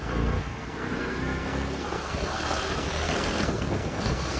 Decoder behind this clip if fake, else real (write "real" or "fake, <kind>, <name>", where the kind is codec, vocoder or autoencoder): fake, codec, SNAC